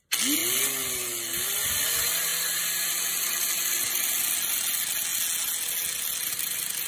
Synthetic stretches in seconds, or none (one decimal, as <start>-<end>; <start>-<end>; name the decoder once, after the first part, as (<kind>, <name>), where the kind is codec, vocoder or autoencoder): none